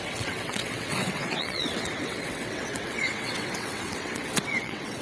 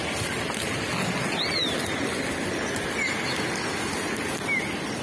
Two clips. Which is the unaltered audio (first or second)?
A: second